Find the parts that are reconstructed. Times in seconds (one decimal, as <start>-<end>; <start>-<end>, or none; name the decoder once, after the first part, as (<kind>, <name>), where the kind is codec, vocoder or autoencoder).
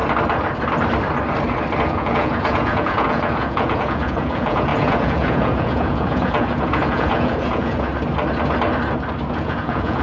1.9-7.9 (vocoder, Vocos); 9.3-10.0